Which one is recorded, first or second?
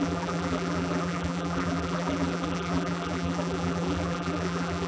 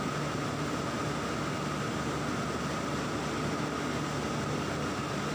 second